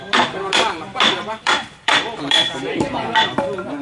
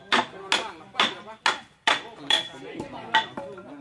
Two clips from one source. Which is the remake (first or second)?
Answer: first